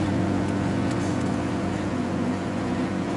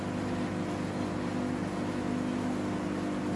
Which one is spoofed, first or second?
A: first